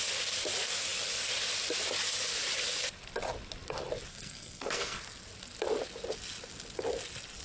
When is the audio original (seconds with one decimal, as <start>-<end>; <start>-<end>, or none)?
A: 0.0-4.1; 5.0-7.4